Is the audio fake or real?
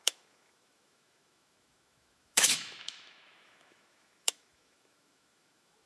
fake